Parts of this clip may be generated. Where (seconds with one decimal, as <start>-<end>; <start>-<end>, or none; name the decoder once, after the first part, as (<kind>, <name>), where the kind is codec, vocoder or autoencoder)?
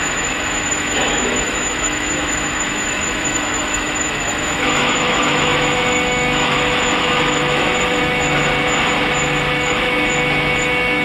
0.0-8.4 (autoencoder, DAC-VAE); 9.5-11.0